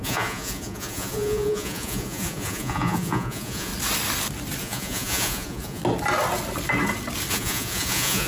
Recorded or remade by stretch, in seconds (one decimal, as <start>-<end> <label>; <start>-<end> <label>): 0.0-3.7 remade; 3.7-4.6 recorded; 4.6-5.8 remade; 5.8-7.3 recorded; 7.3-8.3 remade